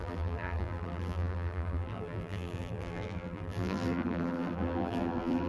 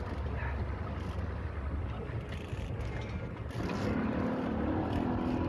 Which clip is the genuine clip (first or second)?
second